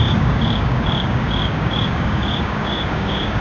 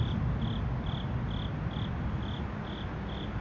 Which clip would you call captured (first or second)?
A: second